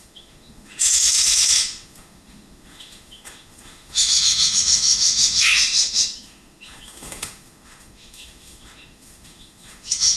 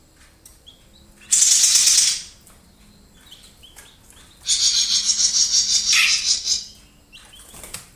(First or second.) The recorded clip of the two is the second